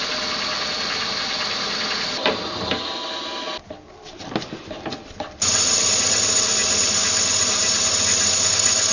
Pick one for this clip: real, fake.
real